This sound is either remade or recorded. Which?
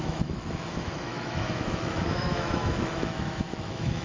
remade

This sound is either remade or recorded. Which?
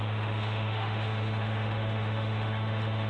remade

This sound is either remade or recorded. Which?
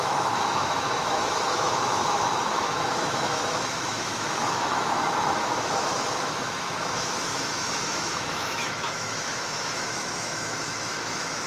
remade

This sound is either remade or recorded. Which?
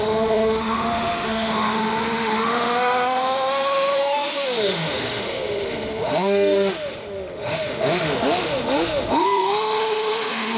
remade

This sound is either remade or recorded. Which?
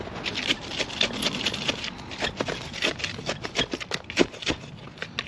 recorded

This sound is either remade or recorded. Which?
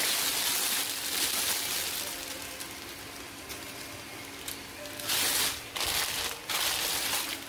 recorded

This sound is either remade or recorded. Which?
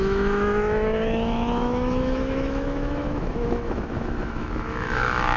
remade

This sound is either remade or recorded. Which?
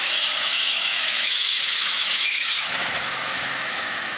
remade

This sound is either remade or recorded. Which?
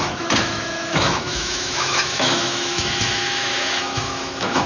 remade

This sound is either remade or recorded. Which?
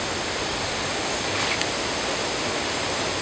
recorded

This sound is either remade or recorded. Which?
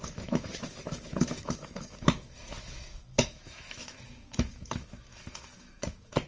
remade